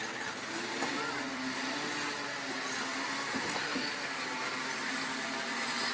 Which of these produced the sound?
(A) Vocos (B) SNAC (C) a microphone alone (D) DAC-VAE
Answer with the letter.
C